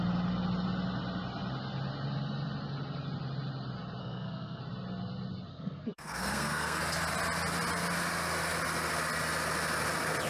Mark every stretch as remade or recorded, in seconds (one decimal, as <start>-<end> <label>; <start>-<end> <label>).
0.0-4.0 recorded; 4.0-4.6 remade; 4.6-5.5 recorded; 5.5-6.8 remade; 6.8-10.3 recorded